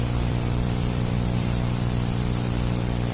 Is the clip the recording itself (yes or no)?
no